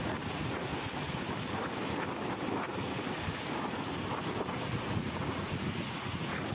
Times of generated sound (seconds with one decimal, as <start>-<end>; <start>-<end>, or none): 0.0-0.7; 4.6-6.5